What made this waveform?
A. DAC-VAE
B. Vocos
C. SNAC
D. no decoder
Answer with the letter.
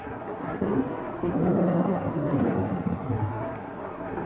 C